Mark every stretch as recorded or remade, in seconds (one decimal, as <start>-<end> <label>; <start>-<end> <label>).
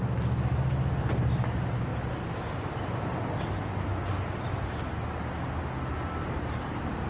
0.0-7.1 recorded